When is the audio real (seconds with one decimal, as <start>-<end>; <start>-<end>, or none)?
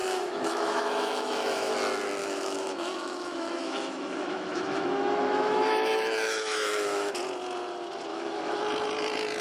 1.7-2.2; 7.1-8.1; 8.6-9.4